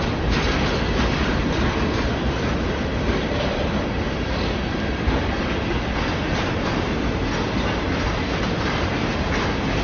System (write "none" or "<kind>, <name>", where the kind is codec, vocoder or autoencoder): none